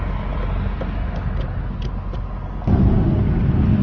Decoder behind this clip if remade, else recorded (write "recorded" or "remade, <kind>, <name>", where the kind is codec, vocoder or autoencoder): recorded